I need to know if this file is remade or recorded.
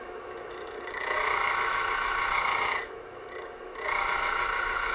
remade